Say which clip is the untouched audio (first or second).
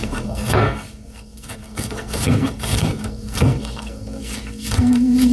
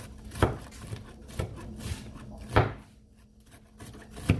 second